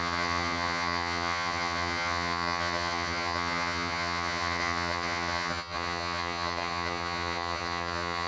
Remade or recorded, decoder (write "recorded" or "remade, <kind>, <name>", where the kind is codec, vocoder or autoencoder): remade, vocoder, HiFi-GAN